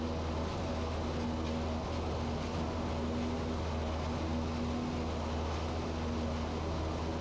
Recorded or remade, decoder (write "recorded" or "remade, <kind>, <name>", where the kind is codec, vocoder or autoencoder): recorded